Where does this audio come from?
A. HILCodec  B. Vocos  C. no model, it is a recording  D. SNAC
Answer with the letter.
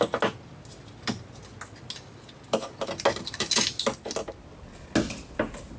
C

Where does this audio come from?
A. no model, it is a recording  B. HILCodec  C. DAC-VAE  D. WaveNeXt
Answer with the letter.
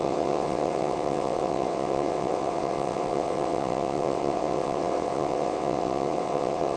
D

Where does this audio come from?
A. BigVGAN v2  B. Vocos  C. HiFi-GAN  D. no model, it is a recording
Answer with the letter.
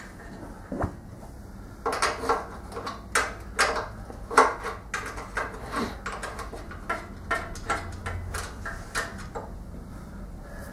D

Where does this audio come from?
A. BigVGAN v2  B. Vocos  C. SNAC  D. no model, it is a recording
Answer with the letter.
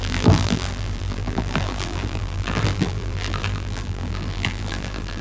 A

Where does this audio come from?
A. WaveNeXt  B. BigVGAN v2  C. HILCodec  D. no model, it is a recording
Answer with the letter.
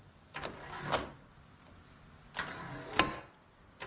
D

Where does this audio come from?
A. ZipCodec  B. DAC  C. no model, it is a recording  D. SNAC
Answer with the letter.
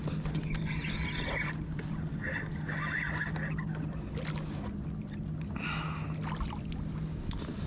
C